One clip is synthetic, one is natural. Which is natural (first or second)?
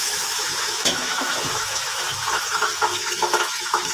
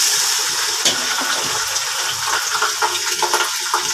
second